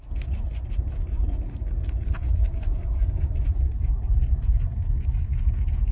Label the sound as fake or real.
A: real